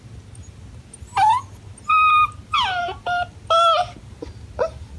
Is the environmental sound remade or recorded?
recorded